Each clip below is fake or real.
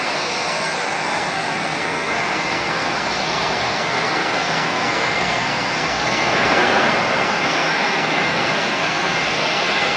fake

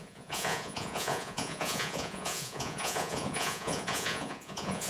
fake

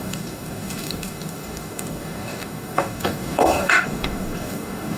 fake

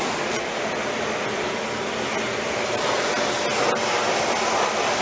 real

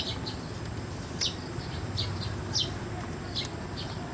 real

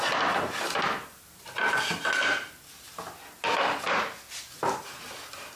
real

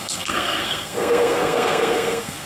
fake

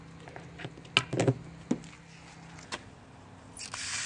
real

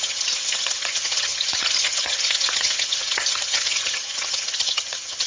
fake